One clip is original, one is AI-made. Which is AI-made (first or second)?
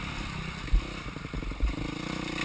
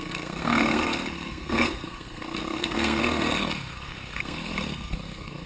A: second